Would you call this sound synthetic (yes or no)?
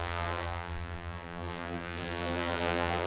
yes